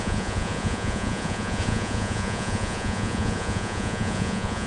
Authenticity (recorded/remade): remade